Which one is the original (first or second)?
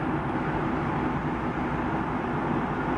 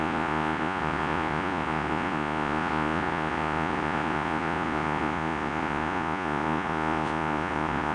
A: first